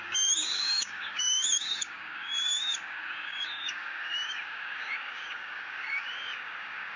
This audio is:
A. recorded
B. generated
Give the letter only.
B